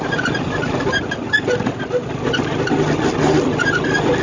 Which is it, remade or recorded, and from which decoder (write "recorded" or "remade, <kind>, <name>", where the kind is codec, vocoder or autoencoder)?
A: recorded